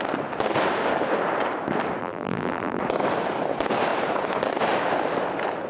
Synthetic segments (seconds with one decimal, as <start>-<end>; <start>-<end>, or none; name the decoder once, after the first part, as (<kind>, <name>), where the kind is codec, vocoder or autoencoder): 2.0-2.8 (vocoder, BigVGAN v2)